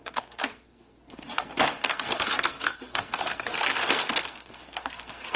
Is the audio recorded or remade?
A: remade